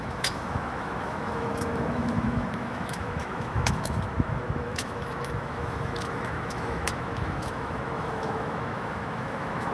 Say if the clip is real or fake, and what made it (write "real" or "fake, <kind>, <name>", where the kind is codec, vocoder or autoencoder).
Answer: fake, autoencoder, DAC-VAE